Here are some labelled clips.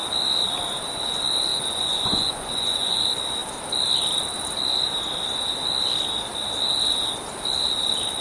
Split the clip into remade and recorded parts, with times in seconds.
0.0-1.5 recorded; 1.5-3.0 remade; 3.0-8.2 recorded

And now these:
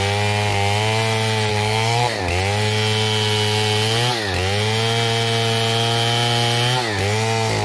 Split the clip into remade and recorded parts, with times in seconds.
0.0-1.5 recorded; 1.5-2.2 remade; 2.2-7.6 recorded

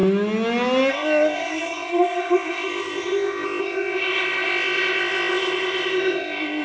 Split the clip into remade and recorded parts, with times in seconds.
0.0-0.9 recorded; 0.9-6.6 remade

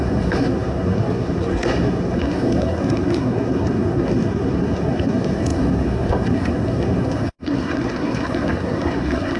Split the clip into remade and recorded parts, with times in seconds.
0.0-9.4 remade